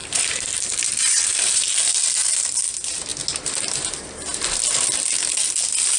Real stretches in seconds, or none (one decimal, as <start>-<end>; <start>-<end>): 0.7-6.0